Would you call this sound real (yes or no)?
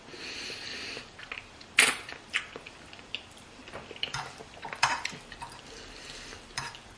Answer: no